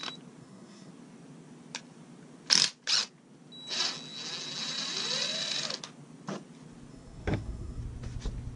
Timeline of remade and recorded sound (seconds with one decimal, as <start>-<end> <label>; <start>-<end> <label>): 0.0-0.4 recorded; 0.4-0.9 remade; 0.9-6.9 recorded; 6.9-7.8 remade; 7.8-8.6 recorded